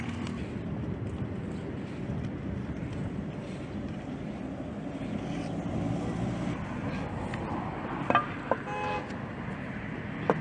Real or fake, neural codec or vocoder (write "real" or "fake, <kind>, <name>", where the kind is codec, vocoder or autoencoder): real